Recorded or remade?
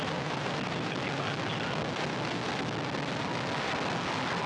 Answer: recorded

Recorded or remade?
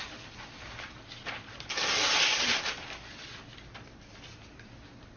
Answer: recorded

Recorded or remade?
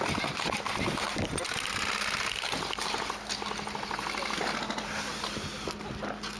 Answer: recorded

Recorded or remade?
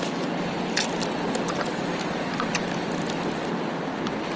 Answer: recorded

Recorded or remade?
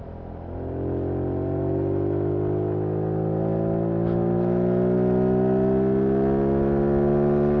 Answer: recorded